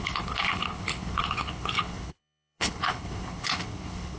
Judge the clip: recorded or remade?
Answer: remade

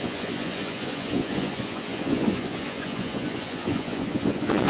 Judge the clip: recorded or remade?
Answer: remade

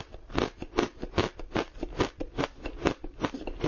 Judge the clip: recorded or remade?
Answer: recorded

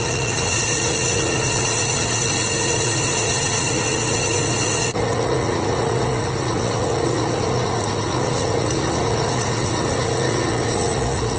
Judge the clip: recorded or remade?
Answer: remade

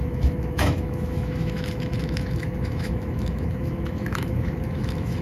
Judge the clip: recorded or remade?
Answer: remade